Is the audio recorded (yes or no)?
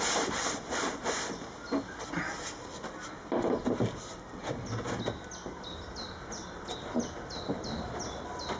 yes